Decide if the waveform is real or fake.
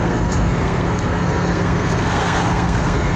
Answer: fake